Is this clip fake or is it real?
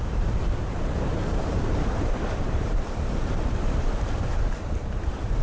fake